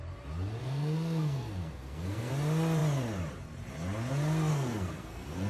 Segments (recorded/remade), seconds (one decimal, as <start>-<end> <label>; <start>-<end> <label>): 0.0-0.6 recorded; 0.6-2.3 remade; 2.3-4.5 recorded; 4.5-5.5 remade